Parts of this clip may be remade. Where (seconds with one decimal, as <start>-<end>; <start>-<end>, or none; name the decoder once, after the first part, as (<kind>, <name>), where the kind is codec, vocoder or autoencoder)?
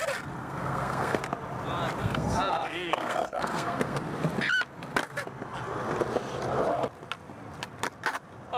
0.4-1.2 (codec, SNAC); 2.0-4.0